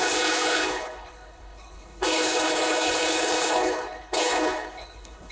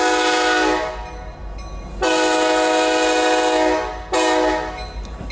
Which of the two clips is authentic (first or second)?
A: second